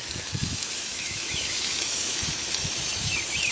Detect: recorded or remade remade